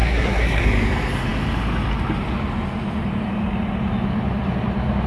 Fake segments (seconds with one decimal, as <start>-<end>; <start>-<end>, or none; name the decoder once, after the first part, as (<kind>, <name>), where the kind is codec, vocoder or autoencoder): 0.0-0.6 (codec, SNAC)